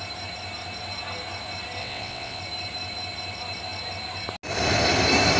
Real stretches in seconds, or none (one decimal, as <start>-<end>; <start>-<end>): 0.0-1.8; 2.4-5.4